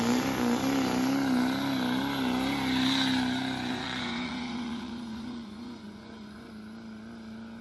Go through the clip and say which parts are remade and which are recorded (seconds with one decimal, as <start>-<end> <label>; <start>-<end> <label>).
0.0-3.7 recorded; 3.7-6.5 remade; 6.5-7.6 recorded